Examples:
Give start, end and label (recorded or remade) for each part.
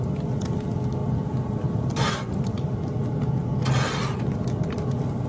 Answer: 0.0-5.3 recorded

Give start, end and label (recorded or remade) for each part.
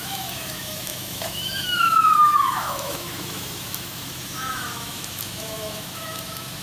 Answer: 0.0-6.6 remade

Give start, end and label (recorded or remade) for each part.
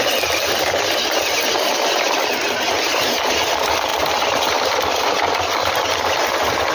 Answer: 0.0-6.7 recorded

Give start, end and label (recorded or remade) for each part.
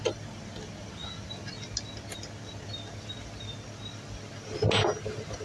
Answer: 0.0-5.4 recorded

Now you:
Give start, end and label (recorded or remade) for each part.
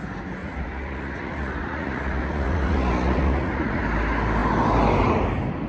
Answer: 0.0-0.4 recorded; 0.4-3.8 remade; 3.8-5.7 recorded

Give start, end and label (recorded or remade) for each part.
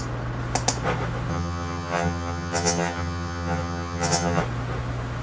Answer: 0.0-1.3 recorded; 1.3-4.4 remade; 4.4-5.2 recorded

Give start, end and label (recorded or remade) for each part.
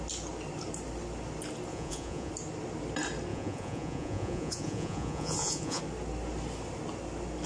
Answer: 0.0-1.7 recorded; 1.7-2.3 remade; 2.3-3.3 recorded; 3.3-5.8 remade; 5.8-7.5 recorded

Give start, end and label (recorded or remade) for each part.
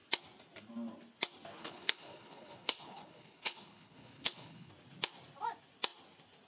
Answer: 0.0-1.6 recorded; 1.6-4.7 remade; 4.7-6.5 recorded